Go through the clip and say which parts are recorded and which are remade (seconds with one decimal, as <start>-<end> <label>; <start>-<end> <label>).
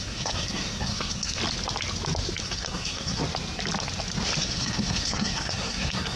0.0-1.4 remade; 1.4-2.4 recorded; 2.4-3.2 remade; 3.2-4.4 recorded; 4.4-6.2 remade